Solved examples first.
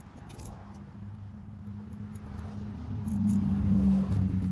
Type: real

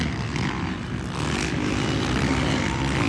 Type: real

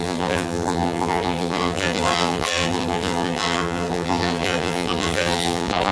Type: fake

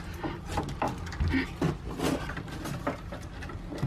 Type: real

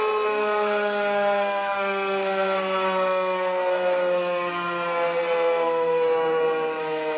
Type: fake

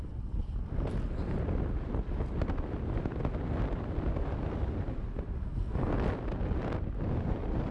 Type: real